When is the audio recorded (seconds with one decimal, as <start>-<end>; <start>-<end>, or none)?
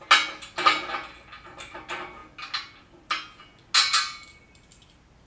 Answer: 0.0-5.3